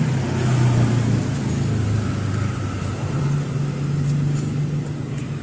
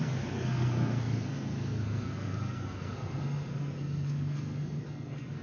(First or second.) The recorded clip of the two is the first